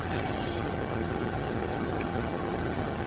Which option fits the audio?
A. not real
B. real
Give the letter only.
A